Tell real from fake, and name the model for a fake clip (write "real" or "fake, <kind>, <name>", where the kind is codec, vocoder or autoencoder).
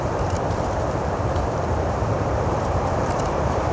fake, vocoder, BigVGAN v2